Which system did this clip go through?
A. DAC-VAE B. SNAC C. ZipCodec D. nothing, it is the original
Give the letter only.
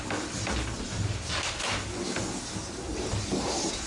D